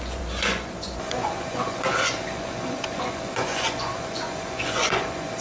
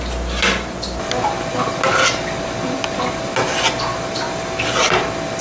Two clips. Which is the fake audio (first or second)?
first